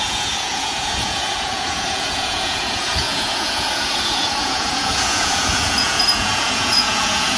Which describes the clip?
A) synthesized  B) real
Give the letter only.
A